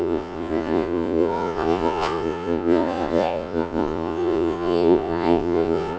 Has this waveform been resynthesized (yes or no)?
yes